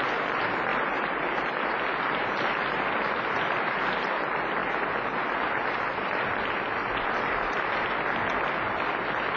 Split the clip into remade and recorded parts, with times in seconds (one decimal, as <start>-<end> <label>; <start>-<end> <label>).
0.0-9.4 recorded